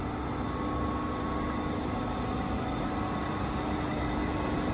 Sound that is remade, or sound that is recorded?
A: recorded